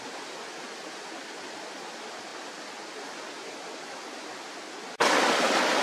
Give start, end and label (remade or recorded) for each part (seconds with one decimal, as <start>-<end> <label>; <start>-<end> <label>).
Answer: 0.0-5.8 recorded